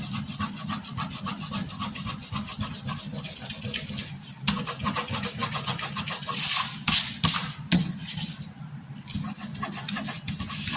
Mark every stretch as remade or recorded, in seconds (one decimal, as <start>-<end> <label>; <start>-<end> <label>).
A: 0.0-10.8 recorded